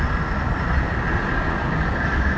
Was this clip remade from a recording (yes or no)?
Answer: no